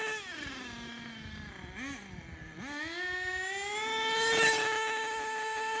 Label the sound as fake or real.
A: real